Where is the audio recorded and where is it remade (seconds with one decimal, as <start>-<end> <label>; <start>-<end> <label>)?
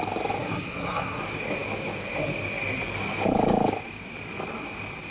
0.0-0.4 recorded; 0.4-1.2 remade; 1.2-5.1 recorded